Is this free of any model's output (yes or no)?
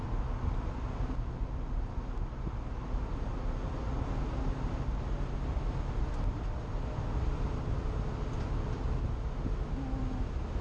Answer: yes